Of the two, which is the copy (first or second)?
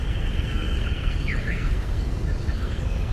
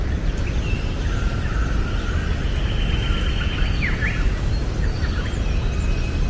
first